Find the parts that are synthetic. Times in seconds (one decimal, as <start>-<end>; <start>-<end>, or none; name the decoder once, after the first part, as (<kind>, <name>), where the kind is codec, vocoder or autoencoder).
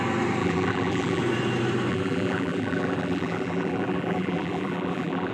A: 0.4-1.2 (vocoder, BigVGAN v2); 1.9-5.3